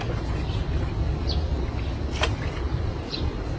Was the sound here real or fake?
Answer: real